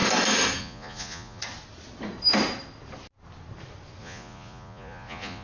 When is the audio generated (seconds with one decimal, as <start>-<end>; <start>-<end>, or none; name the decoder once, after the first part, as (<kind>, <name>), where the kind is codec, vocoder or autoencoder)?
0.6-1.4 (vocoder, Vocos); 4.0-5.4

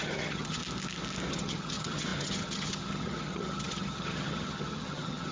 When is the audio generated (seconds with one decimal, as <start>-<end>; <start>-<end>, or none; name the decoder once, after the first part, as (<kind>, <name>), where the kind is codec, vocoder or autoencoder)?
0.0-0.6 (vocoder, HiFi-GAN); 1.3-5.3